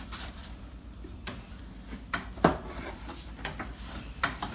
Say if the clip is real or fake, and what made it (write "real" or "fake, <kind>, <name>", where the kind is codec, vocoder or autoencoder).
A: fake, vocoder, BigVGAN v2